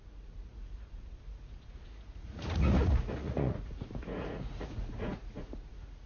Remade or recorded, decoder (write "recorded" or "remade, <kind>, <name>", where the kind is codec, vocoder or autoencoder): remade, vocoder, Vocos